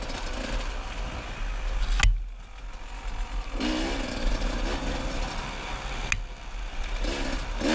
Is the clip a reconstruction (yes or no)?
no